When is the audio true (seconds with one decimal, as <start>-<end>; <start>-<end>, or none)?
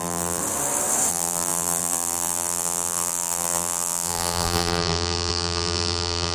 0.4-1.1